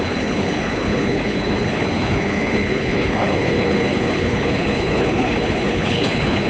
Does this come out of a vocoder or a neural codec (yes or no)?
yes